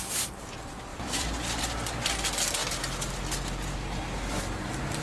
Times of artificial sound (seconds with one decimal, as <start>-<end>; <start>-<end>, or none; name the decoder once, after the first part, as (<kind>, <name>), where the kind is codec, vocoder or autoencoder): 0.9-1.6 (vocoder, BigVGAN v2)